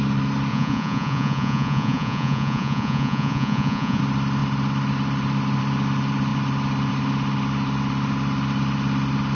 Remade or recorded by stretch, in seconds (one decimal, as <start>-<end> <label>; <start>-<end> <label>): 0.0-0.5 recorded; 0.5-4.0 remade; 4.0-9.3 recorded